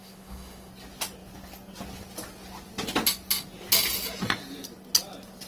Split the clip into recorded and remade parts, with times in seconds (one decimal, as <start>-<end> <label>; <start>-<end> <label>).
0.0-0.7 remade; 0.7-5.5 recorded